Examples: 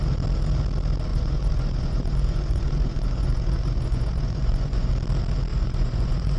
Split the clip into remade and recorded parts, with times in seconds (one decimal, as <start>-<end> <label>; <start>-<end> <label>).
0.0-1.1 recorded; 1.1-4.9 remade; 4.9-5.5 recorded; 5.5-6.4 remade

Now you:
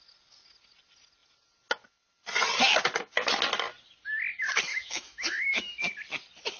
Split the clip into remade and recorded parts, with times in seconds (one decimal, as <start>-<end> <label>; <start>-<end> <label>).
0.0-4.7 recorded; 4.7-5.8 remade; 5.8-6.6 recorded

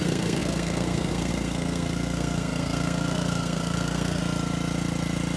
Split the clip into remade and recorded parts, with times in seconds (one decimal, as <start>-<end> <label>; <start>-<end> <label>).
0.0-4.2 remade; 4.2-5.4 recorded

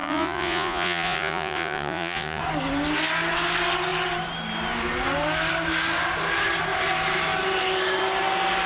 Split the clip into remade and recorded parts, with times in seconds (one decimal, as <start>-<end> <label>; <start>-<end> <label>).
0.0-2.4 remade; 2.4-8.7 recorded